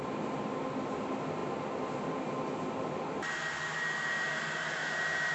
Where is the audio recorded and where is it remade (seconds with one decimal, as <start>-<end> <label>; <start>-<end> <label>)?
0.0-5.3 recorded